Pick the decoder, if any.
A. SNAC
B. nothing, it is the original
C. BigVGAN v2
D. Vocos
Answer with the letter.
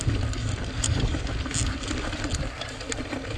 B